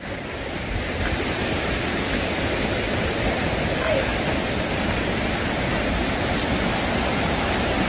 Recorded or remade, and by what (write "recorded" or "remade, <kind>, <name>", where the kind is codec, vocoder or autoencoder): recorded